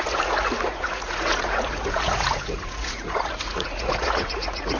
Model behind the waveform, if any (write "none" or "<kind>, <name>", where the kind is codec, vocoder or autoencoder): vocoder, Vocos